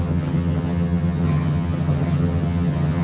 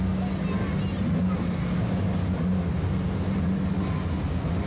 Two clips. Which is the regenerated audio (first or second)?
first